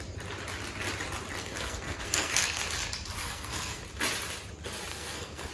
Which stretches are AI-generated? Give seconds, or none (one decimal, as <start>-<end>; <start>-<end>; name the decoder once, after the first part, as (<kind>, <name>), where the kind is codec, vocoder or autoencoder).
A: 1.4-2.6 (codec, SNAC); 3.2-3.8; 4.9-5.5